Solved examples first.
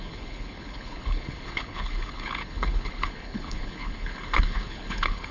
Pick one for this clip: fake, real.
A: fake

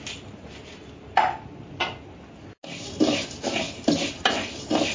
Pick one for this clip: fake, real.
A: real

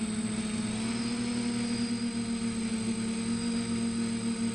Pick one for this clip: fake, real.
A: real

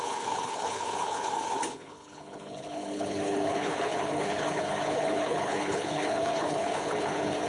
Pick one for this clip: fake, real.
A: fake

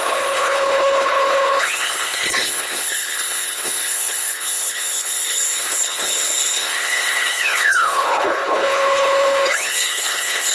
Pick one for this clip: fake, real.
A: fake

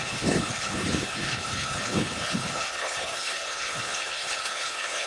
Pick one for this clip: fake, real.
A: fake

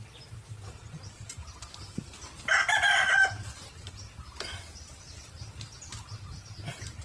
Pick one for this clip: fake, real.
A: real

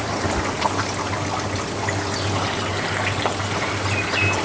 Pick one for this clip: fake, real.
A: real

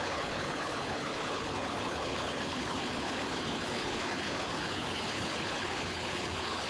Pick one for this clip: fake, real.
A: fake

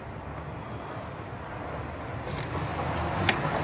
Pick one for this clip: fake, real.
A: real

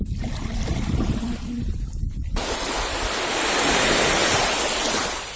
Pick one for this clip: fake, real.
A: real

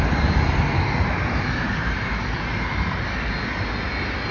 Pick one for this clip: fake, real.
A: real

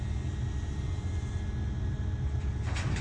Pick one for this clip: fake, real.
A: real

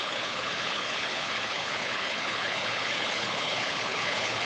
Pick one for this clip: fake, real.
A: fake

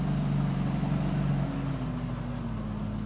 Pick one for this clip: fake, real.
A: real